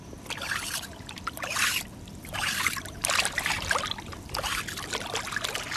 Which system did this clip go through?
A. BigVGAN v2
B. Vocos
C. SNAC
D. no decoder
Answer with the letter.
A